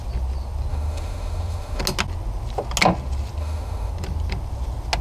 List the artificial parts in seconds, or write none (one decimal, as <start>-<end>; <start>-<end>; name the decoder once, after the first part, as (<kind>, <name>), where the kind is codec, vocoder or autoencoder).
0.7-1.8 (autoencoder, DAC-VAE); 3.4-3.9